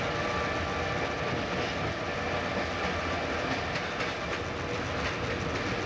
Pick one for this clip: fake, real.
real